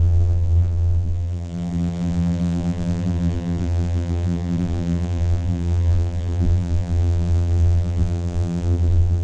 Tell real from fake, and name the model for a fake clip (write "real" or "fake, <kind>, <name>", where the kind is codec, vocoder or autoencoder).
fake, vocoder, BigVGAN v2